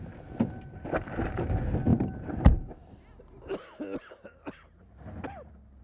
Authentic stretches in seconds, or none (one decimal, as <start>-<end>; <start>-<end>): 0.0-5.8